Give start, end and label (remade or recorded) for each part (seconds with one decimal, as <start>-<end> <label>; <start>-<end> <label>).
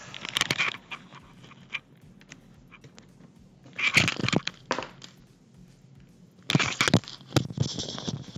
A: 0.0-1.1 recorded; 1.1-2.4 remade; 2.4-4.2 recorded; 4.2-5.2 remade; 5.2-8.4 recorded